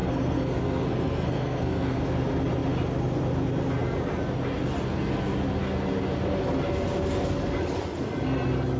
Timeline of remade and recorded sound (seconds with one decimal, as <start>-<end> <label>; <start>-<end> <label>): 0.0-2.0 remade; 2.0-8.8 recorded